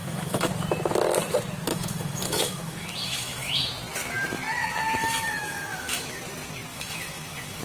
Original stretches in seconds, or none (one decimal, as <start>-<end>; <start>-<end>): 0.5-1.7; 3.7-5.0; 6.2-6.7

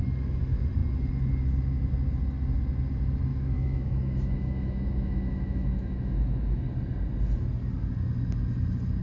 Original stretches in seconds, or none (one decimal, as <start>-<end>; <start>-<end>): 0.0-3.3; 6.6-9.0

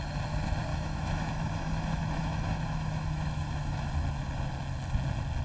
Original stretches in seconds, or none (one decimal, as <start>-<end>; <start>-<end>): 0.0-0.7; 3.9-5.4

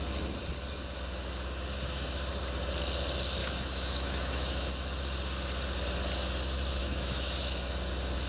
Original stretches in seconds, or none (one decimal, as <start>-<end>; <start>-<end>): 0.0-3.4; 4.7-6.8; 7.4-8.3

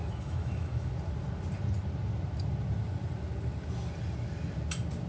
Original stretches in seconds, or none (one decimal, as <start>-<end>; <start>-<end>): 0.9-5.1